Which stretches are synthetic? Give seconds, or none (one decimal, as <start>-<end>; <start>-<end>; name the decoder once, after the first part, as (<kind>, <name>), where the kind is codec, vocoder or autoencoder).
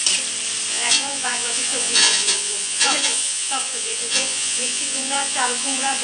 0.7-6.0 (vocoder, Vocos)